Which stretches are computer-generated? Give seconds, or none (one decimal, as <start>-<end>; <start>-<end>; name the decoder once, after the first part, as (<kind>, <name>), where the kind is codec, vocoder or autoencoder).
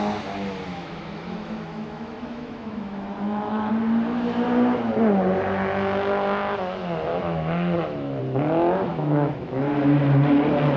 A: 0.7-3.7 (autoencoder, DAC-VAE); 7.1-8.2; 8.9-9.6